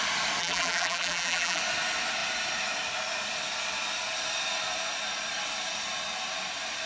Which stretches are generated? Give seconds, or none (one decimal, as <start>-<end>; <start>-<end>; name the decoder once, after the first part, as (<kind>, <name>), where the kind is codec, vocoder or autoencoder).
0.4-1.6 (vocoder, BigVGAN v2)